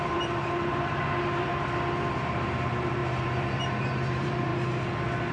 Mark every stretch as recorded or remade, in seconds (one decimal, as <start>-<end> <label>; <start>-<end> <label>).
0.0-1.5 remade; 1.5-2.1 recorded; 2.1-4.5 remade; 4.5-5.3 recorded